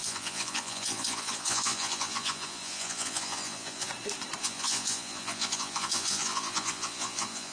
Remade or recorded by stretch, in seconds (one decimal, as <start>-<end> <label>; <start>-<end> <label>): 0.0-3.9 remade; 3.9-4.4 recorded; 4.4-7.5 remade